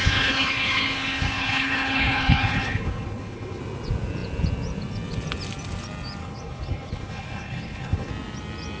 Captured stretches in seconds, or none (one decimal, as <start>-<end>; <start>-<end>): 3.6-6.2; 8.1-8.8